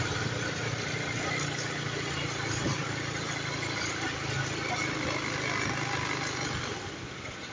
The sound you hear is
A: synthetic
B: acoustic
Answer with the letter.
B